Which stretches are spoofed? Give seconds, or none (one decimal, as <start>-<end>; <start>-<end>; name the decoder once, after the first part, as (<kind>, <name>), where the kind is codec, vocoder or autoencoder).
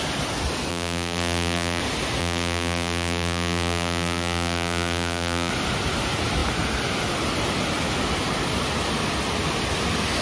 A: 0.7-1.8 (vocoder, BigVGAN v2); 2.2-5.5